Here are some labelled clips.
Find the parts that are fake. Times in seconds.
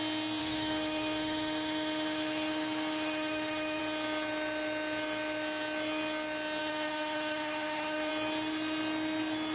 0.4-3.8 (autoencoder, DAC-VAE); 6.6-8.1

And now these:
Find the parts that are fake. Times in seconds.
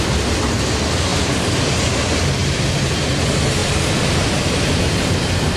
none